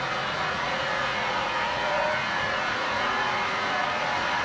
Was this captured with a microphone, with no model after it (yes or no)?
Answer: no